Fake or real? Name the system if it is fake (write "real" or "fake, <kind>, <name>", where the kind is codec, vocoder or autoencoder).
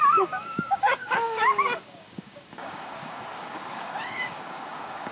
fake, codec, DAC